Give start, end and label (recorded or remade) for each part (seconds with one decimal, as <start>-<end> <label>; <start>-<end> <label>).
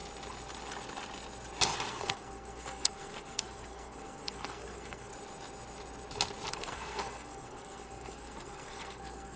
0.0-1.9 recorded; 1.9-5.1 remade; 5.1-6.5 recorded; 6.5-9.4 remade